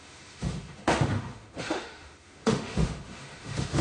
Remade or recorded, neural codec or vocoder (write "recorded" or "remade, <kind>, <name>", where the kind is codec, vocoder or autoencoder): remade, autoencoder, DAC-VAE